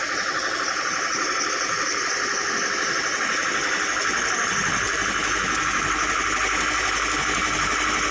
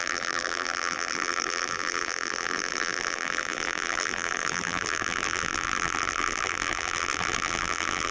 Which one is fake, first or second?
second